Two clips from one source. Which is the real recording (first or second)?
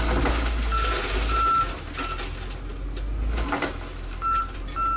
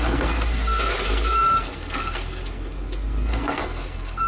first